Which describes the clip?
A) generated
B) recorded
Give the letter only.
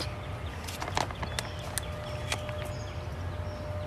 B